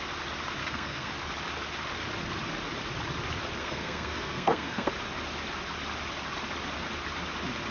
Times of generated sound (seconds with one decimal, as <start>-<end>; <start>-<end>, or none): 0.6-1.1; 3.6-4.9